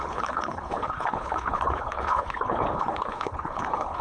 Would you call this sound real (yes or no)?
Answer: no